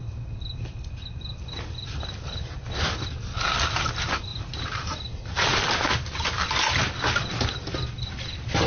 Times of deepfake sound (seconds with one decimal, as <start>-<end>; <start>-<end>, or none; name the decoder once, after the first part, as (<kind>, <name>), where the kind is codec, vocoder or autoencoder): 4.3-5.9 (vocoder, BigVGAN v2)